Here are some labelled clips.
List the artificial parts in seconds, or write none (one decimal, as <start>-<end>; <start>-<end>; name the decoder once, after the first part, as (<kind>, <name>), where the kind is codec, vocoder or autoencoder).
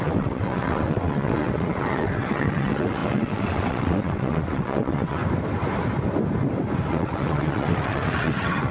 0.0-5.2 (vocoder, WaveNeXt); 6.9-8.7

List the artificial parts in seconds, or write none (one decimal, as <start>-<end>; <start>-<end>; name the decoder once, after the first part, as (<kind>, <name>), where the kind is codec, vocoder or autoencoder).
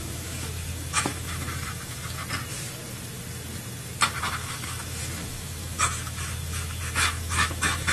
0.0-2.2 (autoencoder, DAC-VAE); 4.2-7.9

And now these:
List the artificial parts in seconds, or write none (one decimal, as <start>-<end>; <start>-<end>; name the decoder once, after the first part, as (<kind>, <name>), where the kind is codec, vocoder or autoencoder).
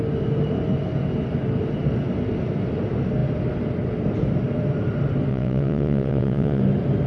5.3-6.6 (vocoder, WaveNeXt)